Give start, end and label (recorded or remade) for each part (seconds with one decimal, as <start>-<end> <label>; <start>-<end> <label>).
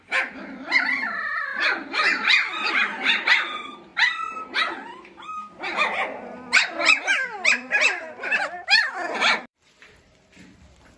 0.0-1.5 remade; 1.5-2.7 recorded; 2.7-3.9 remade; 3.9-8.4 recorded; 8.4-11.0 remade